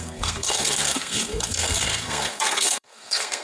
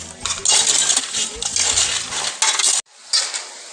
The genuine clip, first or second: second